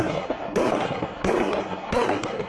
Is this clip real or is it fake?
fake